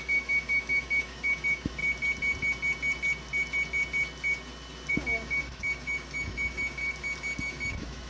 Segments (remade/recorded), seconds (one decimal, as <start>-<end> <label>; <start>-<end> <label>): 0.0-1.8 remade; 1.8-4.9 recorded; 4.9-6.8 remade; 6.8-7.4 recorded; 7.4-8.1 remade